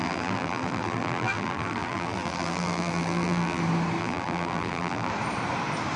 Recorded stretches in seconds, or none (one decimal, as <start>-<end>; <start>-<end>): 3.6-4.0; 5.1-6.0